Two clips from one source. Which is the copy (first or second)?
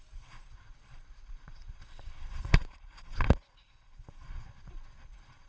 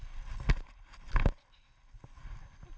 first